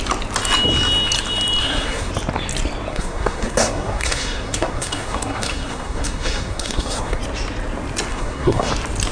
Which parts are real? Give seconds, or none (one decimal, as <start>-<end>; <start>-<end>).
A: 0.0-1.6; 2.1-2.9; 7.2-8.1; 8.7-9.1